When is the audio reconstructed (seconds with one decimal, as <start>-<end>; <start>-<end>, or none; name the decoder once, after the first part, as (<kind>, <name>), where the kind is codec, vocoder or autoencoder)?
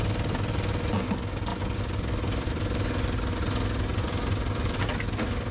none